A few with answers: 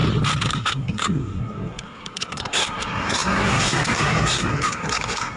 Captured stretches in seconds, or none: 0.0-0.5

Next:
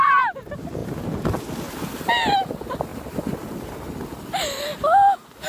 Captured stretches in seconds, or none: 0.0-5.5

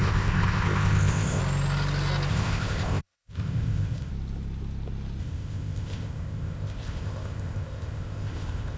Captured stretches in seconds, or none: 1.4-2.3; 4.1-5.2

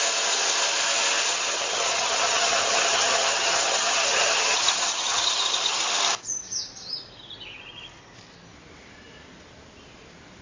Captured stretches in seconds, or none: 0.0-1.3; 5.8-10.4

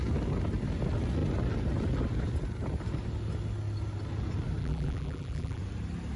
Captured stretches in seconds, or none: 0.0-4.6; 5.6-6.2

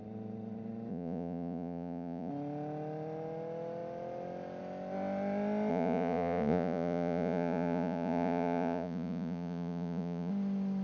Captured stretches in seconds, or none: 0.0-0.9; 2.3-5.7; 10.3-10.8

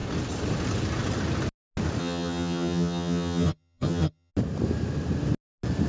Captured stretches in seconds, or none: 0.0-2.0; 4.3-5.9

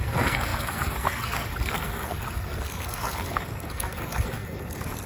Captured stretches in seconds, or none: none